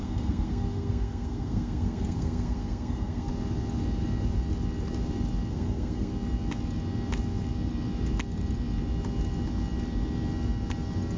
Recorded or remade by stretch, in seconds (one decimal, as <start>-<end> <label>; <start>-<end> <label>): 0.0-3.3 remade; 3.3-5.5 recorded; 5.5-6.1 remade; 6.1-11.2 recorded